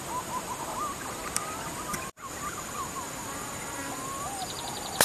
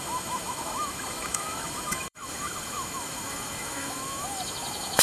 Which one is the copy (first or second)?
second